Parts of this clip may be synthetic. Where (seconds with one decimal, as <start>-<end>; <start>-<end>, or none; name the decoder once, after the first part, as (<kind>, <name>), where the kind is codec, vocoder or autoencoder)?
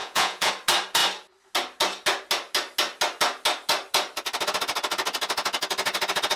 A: 0.0-0.5 (vocoder, Vocos)